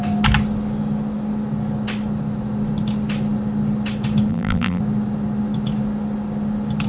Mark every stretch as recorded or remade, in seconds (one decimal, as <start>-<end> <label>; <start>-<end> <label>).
0.0-4.3 recorded; 4.3-4.8 remade; 4.8-6.9 recorded